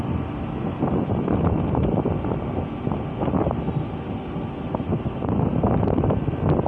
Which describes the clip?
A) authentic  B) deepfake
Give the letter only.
A